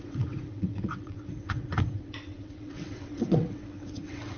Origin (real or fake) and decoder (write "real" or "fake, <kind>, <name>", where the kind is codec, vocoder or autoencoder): fake, vocoder, WaveNeXt